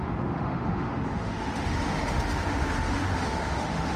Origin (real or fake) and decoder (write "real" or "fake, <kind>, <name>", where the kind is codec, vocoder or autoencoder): fake, autoencoder, DAC-VAE